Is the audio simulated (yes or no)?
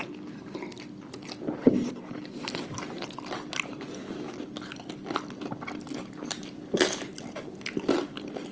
no